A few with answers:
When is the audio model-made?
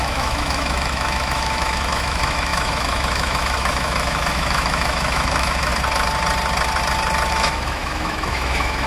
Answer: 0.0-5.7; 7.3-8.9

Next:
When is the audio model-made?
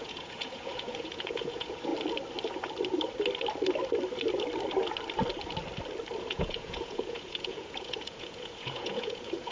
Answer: 0.0-1.9; 6.2-9.5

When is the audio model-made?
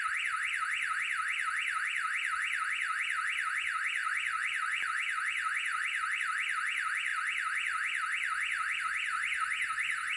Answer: 4.0-6.2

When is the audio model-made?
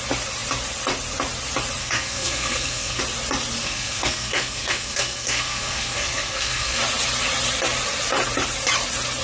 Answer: 1.8-3.0; 3.6-6.8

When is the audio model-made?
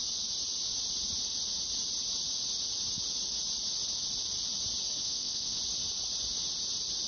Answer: 5.0-5.6